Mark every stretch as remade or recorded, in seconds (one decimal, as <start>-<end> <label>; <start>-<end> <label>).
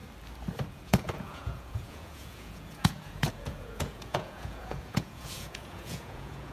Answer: 0.0-0.7 recorded; 0.7-6.5 remade